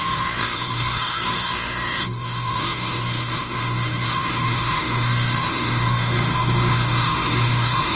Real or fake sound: fake